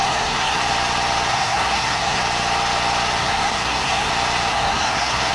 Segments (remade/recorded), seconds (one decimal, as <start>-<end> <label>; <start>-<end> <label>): 0.0-0.6 remade; 0.6-1.3 recorded; 1.3-2.2 remade; 2.2-3.2 recorded; 3.2-4.1 remade; 4.1-4.5 recorded; 4.5-5.3 remade